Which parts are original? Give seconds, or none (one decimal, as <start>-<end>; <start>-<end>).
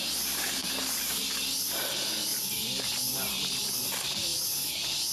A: 0.0-2.3; 3.3-5.1